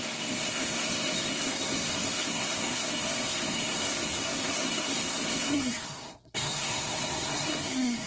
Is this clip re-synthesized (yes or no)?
yes